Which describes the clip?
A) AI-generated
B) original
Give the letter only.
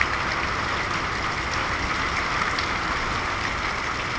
B